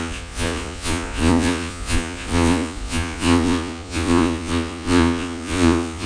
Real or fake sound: fake